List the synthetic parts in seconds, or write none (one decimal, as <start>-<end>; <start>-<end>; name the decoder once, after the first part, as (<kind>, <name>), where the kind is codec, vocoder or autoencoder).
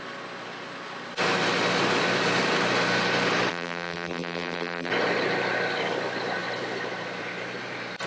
3.5-4.9 (vocoder, BigVGAN v2)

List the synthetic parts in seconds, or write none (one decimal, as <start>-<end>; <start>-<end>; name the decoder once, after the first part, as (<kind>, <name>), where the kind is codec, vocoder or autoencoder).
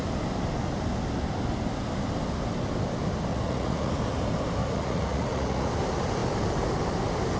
3.3-3.9 (vocoder, Vocos); 4.6-5.7